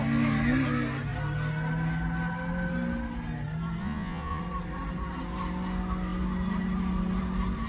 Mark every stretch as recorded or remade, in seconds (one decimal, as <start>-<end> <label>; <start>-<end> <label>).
0.0-3.8 recorded; 3.8-4.4 remade; 4.4-7.7 recorded